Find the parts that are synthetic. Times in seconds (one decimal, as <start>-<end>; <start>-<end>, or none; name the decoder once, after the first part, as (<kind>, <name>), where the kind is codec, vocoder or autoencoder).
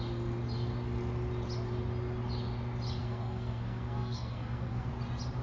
3.0-4.9 (codec, SNAC)